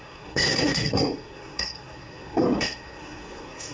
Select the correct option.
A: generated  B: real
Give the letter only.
A